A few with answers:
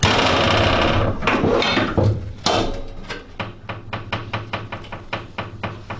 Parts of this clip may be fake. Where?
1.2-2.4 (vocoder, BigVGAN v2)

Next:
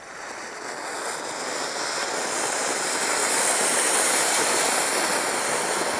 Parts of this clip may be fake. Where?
3.2-4.8 (vocoder, BigVGAN v2)